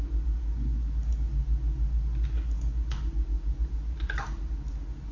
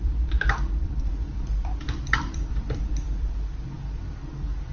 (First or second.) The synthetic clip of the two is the second